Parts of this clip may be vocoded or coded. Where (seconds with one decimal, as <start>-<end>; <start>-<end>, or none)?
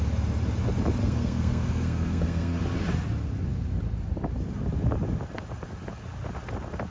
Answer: 1.0-2.6